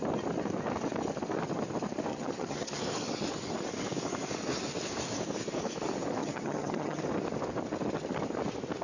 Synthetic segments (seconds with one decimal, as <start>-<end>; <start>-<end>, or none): 2.1-2.8; 6.2-7.0